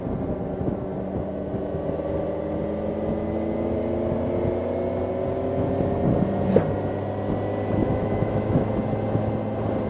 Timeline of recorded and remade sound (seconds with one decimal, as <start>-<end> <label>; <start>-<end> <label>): 0.0-7.8 recorded; 7.8-8.7 remade; 8.7-9.9 recorded